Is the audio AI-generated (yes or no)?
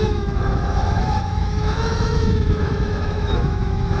yes